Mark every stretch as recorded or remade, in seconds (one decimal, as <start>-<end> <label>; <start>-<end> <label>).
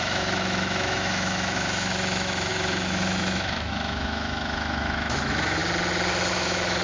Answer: 0.0-5.6 remade; 5.6-6.3 recorded; 6.3-6.8 remade